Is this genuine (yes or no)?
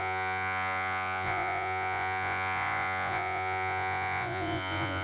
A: no